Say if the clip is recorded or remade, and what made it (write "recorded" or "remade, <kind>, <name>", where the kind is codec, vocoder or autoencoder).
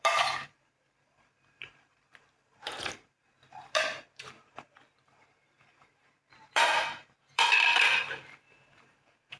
remade, vocoder, BigVGAN v2